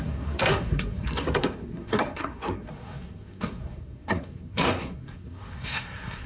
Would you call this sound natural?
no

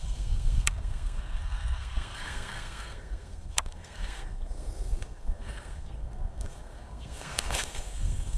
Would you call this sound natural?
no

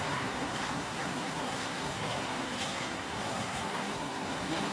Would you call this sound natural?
no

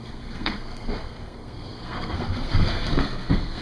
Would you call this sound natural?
no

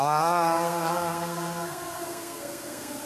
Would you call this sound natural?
no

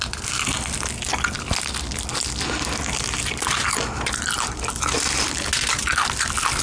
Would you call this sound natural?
yes